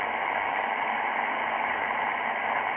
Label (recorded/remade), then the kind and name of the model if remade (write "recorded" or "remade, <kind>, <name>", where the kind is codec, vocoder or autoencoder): recorded